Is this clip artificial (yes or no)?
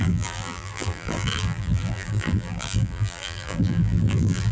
yes